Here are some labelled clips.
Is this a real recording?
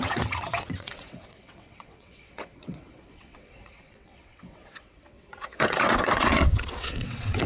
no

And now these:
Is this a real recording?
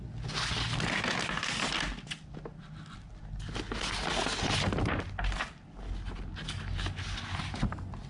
yes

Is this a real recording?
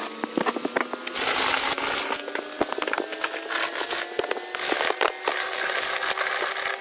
yes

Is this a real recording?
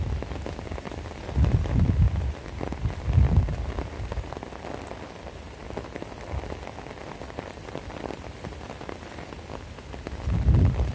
yes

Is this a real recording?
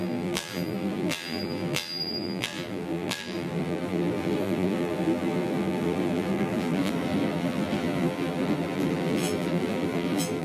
no